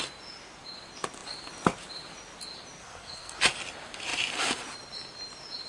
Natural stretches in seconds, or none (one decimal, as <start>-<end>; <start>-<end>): 0.0-2.8; 3.4-5.7